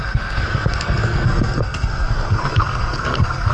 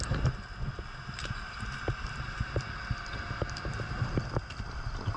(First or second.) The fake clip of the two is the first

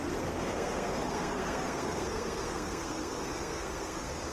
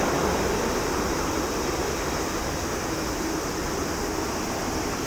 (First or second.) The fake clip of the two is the first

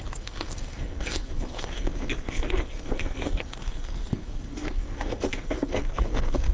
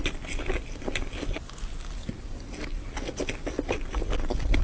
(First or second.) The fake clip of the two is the first